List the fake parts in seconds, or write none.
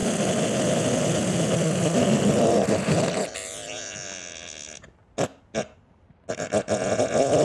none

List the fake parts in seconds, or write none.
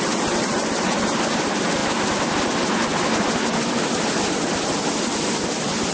none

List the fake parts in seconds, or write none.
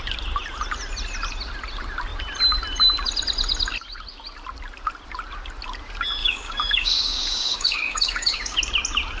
6.2-8.6 (codec, DAC)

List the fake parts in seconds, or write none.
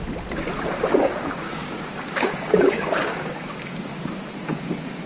0.9-3.9 (codec, DAC)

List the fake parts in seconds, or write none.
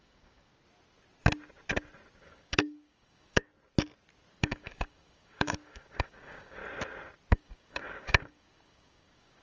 0.0-0.5 (codec, DAC); 2.2-3.5; 4.3-6.6; 7.3-9.4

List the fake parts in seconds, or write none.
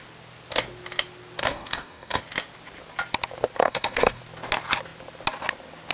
1.4-2.2 (codec, DAC); 3.6-4.2